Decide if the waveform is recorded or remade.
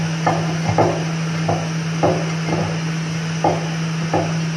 recorded